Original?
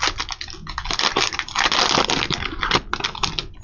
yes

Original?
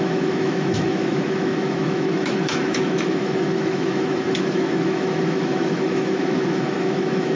no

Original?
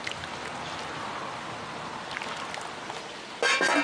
yes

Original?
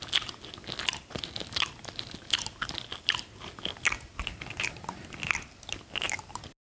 yes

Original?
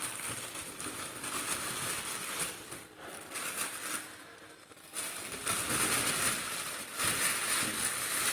yes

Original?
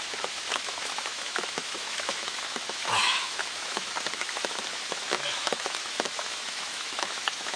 no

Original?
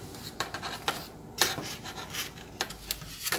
yes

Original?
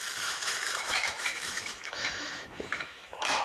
no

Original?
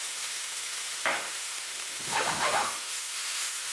no